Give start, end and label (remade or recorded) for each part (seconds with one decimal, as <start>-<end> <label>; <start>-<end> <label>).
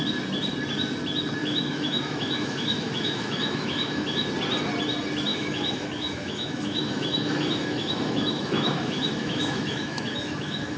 0.0-1.4 recorded; 1.4-4.3 remade; 4.3-5.3 recorded; 5.3-10.8 remade